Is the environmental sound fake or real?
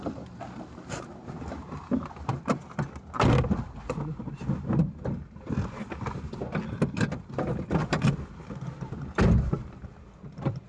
real